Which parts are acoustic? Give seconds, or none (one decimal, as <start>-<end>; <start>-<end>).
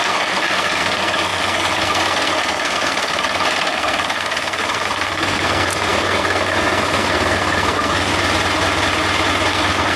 8.1-9.5